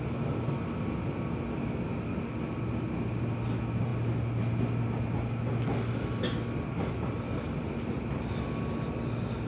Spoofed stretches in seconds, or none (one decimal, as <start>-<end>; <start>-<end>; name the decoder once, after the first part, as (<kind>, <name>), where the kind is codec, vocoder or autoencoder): none